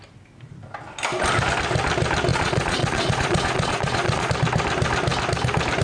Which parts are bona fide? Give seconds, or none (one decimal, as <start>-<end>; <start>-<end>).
0.0-2.3; 4.3-5.8